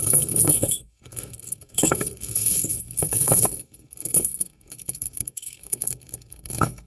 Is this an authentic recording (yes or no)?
no